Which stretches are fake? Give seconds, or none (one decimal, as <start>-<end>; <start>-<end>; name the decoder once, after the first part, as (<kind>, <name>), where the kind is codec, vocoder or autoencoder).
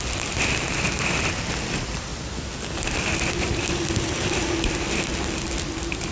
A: 0.0-2.1 (vocoder, BigVGAN v2); 2.8-6.1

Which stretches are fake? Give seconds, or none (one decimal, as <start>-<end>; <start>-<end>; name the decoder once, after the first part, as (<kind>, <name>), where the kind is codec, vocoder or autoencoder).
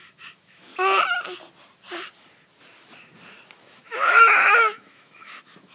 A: 0.0-0.7 (autoencoder, DAC-VAE); 3.6-5.7